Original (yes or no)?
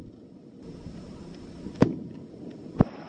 yes